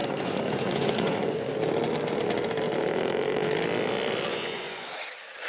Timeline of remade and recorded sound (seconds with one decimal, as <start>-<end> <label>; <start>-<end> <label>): 0.0-1.5 remade; 1.5-4.3 recorded; 4.3-4.9 remade; 4.9-5.5 recorded